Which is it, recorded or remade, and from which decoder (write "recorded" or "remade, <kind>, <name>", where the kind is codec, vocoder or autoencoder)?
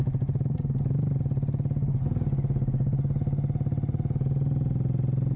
recorded